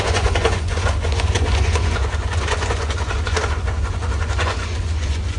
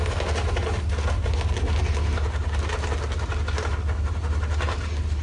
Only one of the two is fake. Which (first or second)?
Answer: first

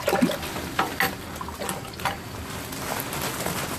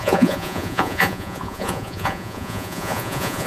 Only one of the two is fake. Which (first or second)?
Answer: second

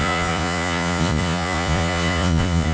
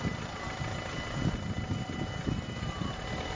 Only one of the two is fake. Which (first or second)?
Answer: first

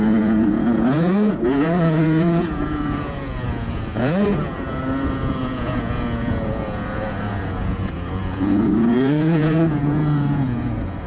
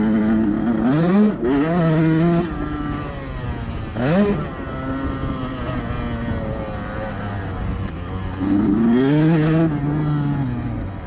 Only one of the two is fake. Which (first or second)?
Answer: first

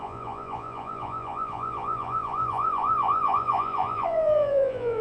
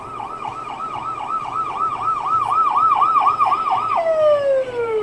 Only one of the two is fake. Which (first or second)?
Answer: first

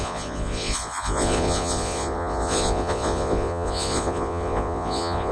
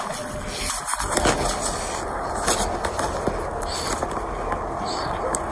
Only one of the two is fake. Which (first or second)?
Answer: first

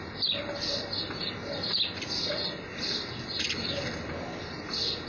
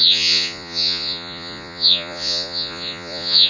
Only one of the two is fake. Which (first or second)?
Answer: second